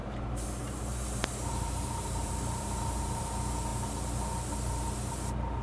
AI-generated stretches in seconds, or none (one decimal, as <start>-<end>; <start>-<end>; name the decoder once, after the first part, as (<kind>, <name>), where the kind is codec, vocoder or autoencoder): 0.0-3.2 (vocoder, BigVGAN v2)